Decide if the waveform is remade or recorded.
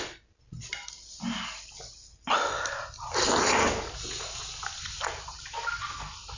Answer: recorded